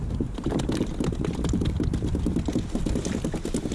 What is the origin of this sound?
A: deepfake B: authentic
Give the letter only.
B